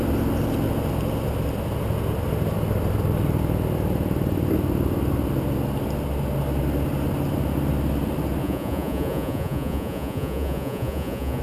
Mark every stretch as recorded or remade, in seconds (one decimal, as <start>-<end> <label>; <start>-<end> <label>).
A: 0.0-8.4 recorded; 8.4-11.4 remade